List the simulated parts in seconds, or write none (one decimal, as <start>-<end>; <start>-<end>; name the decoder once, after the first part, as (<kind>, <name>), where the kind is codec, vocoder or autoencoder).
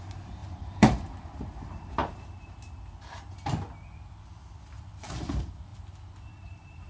0.0-2.0 (vocoder, BigVGAN v2); 4.8-5.7; 6.3-6.9